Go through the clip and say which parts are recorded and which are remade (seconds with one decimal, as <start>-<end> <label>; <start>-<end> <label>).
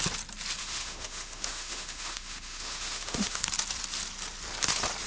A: 0.0-0.6 recorded; 0.6-3.4 remade; 3.4-5.1 recorded